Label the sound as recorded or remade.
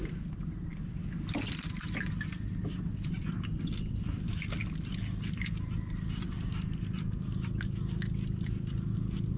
recorded